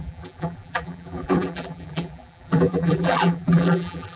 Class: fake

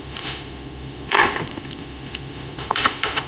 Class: fake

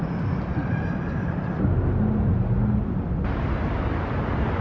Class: real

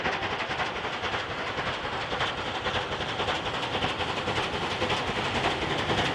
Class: real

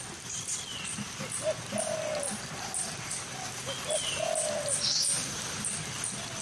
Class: real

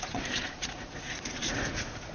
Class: fake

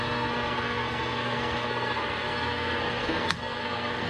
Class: fake